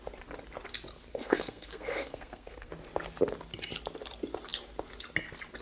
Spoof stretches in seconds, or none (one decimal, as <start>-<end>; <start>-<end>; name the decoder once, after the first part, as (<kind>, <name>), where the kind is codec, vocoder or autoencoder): 1.1-2.7 (codec, SNAC)